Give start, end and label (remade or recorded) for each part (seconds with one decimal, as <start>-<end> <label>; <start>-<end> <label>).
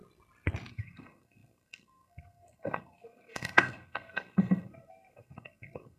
0.0-0.7 recorded; 0.7-6.0 remade